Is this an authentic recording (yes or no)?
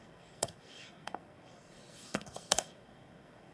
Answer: no